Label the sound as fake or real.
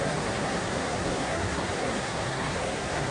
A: fake